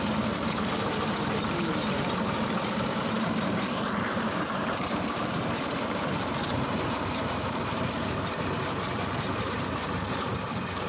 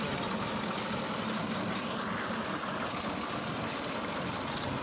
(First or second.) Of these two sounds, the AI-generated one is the first